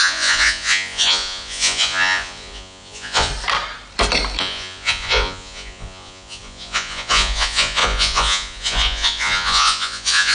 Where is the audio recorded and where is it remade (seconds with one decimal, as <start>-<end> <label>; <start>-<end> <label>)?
0.0-3.3 remade; 3.3-4.4 recorded; 4.4-10.3 remade